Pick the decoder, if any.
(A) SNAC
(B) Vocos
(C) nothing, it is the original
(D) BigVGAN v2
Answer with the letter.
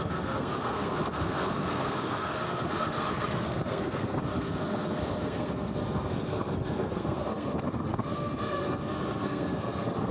A